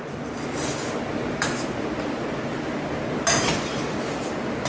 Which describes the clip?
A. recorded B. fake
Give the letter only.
A